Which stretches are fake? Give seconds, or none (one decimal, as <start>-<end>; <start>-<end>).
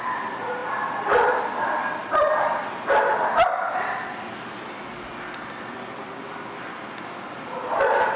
none